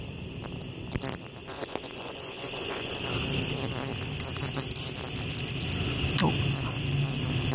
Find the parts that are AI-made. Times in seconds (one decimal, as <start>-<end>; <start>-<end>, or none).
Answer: 1.4-2.9